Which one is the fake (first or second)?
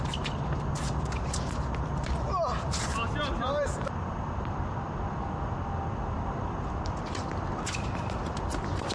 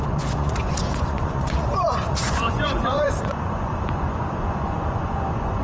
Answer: second